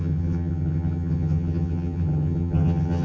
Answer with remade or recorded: remade